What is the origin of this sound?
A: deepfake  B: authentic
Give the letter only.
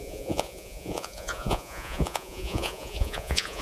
A